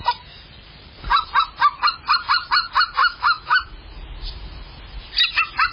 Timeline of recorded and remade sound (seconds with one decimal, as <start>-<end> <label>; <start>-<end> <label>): 0.0-3.0 recorded; 3.0-3.6 remade; 3.6-5.7 recorded